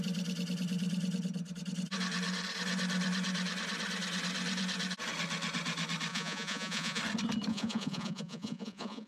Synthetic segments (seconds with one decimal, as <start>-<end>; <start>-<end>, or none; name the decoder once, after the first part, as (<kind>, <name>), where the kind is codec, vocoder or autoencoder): 6.1-7.0 (vocoder, Vocos); 7.5-9.1